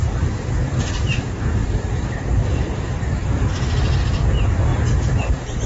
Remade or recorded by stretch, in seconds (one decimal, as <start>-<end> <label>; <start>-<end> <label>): 0.0-4.7 remade; 4.7-5.3 recorded; 5.3-5.7 remade